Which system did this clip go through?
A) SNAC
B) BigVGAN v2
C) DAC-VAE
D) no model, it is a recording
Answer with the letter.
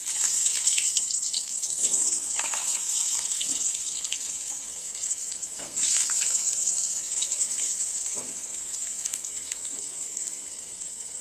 A